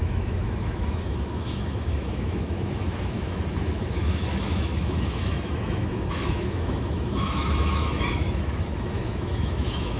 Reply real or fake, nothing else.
fake